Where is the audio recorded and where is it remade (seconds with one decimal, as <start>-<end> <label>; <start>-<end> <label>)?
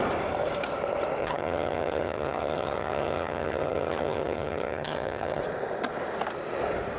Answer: 0.0-1.2 recorded; 1.2-5.4 remade; 5.4-7.0 recorded